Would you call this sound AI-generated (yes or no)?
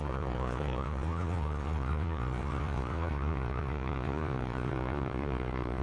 yes